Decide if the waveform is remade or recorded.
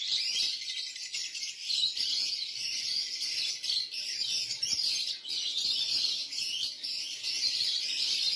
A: recorded